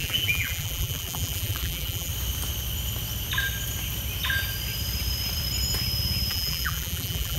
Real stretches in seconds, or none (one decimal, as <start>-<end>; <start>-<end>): 2.1-6.3